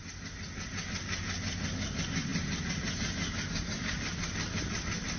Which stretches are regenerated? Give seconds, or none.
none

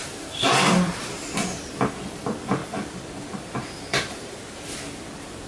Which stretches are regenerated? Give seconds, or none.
2.6-4.4 (vocoder, BigVGAN v2)

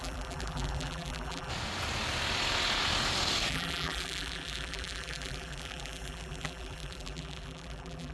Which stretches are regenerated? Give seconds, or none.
0.0-1.5 (vocoder, BigVGAN v2); 3.5-8.1

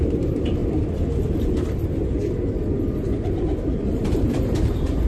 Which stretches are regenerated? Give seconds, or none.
0.0-0.6 (vocoder, BigVGAN v2); 3.7-5.1

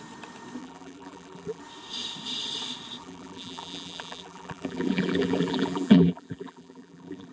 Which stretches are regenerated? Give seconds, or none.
0.6-1.6 (vocoder, BigVGAN v2); 3.0-7.3